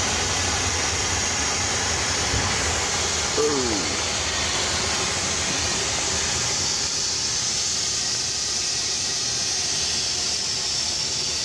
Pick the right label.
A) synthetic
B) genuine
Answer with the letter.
B